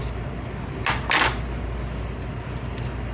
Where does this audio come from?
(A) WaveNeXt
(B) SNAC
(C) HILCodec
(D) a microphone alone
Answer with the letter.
D